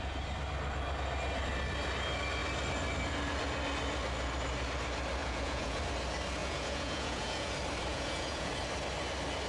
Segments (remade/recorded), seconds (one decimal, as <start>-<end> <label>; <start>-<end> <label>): 0.0-5.2 recorded; 5.2-5.8 remade; 5.8-6.4 recorded; 6.4-7.5 remade; 7.5-7.9 recorded; 7.9-8.5 remade; 8.5-9.5 recorded